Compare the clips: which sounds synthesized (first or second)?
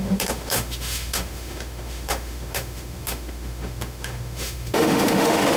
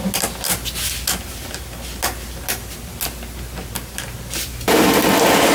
first